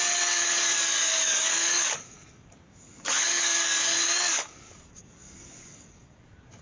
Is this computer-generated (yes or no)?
yes